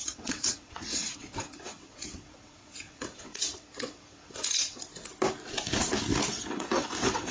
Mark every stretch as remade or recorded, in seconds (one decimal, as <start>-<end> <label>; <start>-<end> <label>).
0.0-4.9 remade; 4.9-6.3 recorded; 6.3-7.3 remade